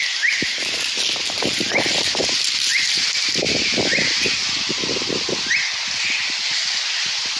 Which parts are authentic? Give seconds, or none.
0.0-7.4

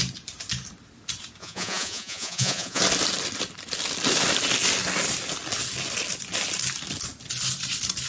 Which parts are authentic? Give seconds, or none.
0.0-1.4; 2.8-8.1

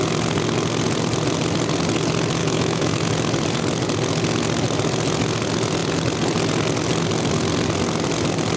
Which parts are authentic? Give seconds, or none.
0.0-2.4; 3.1-8.6

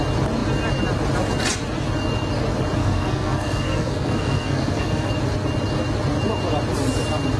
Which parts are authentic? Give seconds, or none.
0.0-2.8; 5.1-7.4

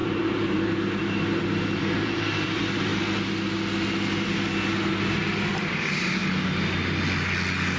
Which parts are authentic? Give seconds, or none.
2.9-5.6; 6.2-7.8

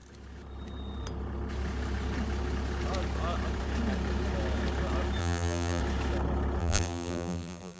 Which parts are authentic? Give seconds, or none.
0.0-5.2; 5.8-6.6

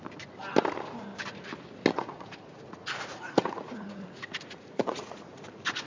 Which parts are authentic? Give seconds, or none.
0.0-1.9; 5.4-5.9

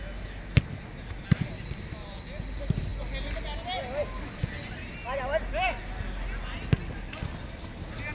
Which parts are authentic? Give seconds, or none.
0.0-8.1